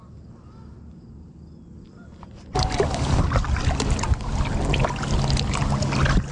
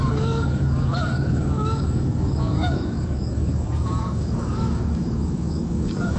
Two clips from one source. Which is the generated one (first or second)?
second